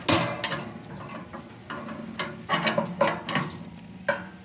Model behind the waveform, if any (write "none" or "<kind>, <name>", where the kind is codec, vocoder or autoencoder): none